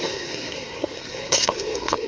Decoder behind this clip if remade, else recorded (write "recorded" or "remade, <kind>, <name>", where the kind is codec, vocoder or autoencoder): remade, codec, SNAC